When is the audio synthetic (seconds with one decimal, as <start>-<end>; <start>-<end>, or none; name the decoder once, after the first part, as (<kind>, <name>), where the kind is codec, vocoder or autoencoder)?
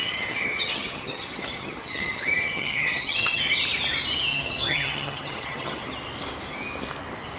0.0-3.4 (vocoder, HiFi-GAN); 4.3-5.9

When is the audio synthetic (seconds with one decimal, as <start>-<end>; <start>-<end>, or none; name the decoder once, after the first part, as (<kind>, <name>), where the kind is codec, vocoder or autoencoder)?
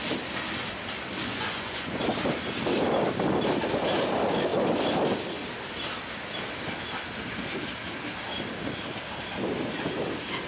1.3-2.0 (vocoder, Vocos)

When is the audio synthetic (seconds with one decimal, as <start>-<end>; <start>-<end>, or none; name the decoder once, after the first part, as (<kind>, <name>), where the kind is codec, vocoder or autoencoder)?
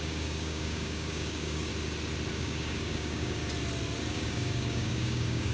0.0-1.7 (codec, DAC); 2.3-3.4; 4.1-5.5